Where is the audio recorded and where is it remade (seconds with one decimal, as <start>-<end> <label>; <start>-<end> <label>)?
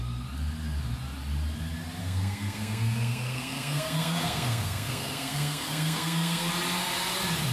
0.0-2.0 recorded; 2.0-6.5 remade; 6.5-7.5 recorded